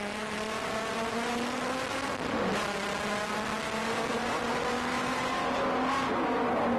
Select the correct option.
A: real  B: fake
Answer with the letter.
A